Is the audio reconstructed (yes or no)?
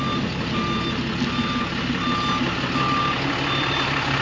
no